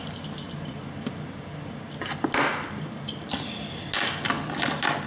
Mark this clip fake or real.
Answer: real